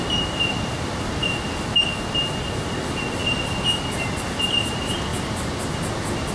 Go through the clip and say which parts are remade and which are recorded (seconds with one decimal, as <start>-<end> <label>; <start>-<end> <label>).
0.0-1.8 recorded; 1.8-2.8 remade; 2.8-5.1 recorded; 5.1-6.3 remade